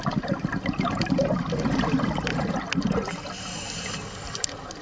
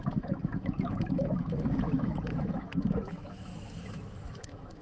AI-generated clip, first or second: second